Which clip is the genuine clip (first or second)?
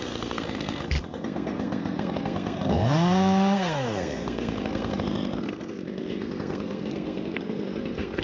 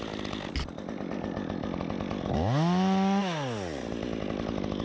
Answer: second